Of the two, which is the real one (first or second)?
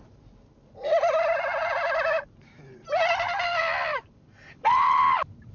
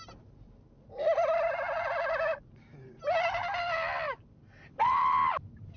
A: second